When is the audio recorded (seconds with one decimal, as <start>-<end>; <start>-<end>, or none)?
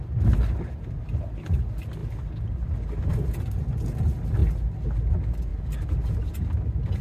0.0-7.0